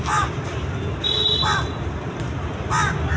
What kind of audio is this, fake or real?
real